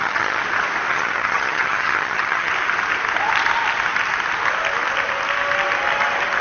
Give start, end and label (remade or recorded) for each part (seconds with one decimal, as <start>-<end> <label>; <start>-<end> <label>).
0.0-0.4 remade; 0.4-0.9 recorded; 0.9-2.5 remade; 2.5-6.4 recorded